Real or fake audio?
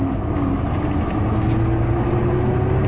real